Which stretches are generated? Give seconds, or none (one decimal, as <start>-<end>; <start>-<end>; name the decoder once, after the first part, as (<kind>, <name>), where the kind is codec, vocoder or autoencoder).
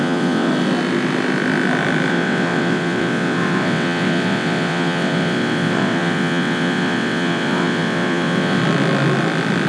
0.0-0.5 (vocoder, WaveNeXt); 2.1-8.6